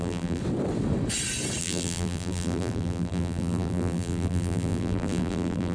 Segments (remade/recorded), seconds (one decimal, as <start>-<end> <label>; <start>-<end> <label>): 0.0-0.4 remade; 0.4-1.6 recorded; 1.6-5.7 remade